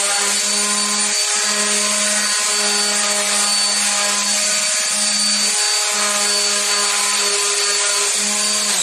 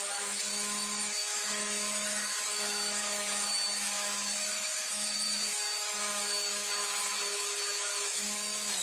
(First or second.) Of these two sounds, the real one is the first